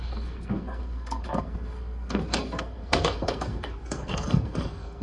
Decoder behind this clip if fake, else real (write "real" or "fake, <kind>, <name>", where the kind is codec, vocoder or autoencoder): fake, codec, SNAC